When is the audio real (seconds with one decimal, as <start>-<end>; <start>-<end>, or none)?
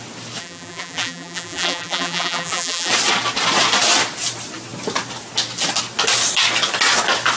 0.0-0.4; 2.9-7.4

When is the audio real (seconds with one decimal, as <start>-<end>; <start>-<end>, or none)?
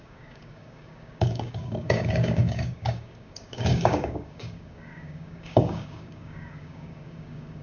none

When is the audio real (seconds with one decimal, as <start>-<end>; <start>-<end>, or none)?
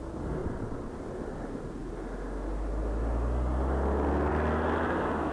0.0-0.4; 0.9-5.3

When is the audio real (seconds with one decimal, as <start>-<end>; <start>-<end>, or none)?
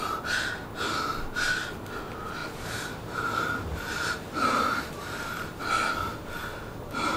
0.0-2.4; 5.6-7.2